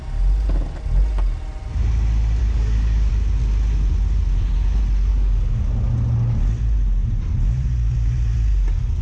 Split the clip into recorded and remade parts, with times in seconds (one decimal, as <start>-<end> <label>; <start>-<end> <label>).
0.0-2.4 recorded; 2.4-3.1 remade; 3.1-5.1 recorded; 5.1-5.7 remade; 5.7-9.0 recorded